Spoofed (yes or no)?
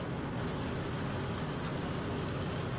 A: no